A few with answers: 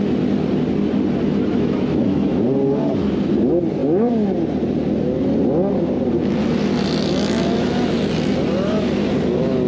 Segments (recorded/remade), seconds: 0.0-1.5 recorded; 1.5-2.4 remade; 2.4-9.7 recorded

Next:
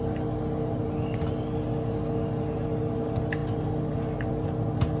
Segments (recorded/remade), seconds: 0.0-5.0 recorded

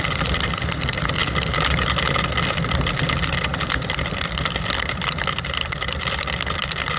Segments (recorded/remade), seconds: 0.0-1.2 remade; 1.2-2.5 recorded; 2.5-7.0 remade

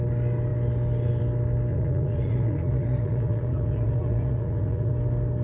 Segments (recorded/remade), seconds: 0.0-1.7 recorded; 1.7-4.9 remade; 4.9-5.4 recorded

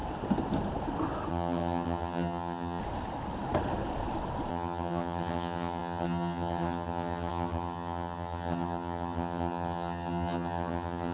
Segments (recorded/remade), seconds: 0.0-1.3 recorded; 1.3-2.8 remade; 2.8-4.5 recorded; 4.5-11.1 remade

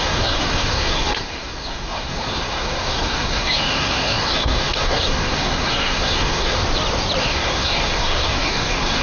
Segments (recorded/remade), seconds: 0.0-6.6 remade; 6.6-7.2 recorded; 7.2-9.0 remade

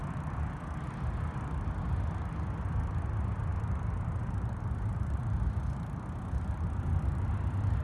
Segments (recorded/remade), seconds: 0.0-3.5 recorded; 3.5-5.2 remade; 5.2-7.8 recorded

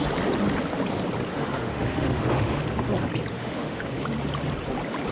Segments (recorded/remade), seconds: 0.0-1.3 recorded; 1.3-2.6 remade; 2.6-3.3 recorded; 3.3-3.8 remade; 3.8-5.1 recorded